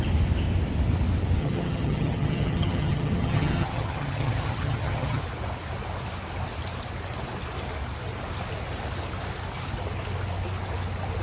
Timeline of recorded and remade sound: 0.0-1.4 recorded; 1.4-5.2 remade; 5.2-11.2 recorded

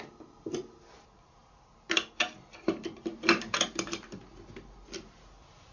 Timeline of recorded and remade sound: 0.0-5.7 recorded

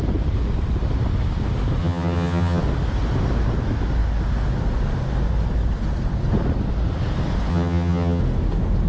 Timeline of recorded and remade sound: 0.0-1.8 recorded; 1.8-2.6 remade; 2.6-7.5 recorded; 7.5-8.2 remade; 8.2-8.9 recorded